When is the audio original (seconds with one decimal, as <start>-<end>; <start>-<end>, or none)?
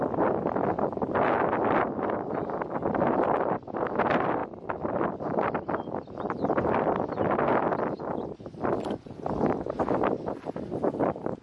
0.0-4.4; 7.6-11.4